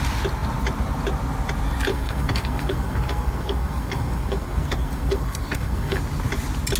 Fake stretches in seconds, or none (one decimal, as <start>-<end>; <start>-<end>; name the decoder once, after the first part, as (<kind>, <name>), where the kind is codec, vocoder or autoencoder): 1.9-6.0 (codec, SNAC)